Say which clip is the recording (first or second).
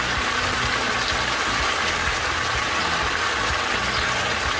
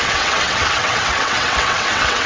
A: first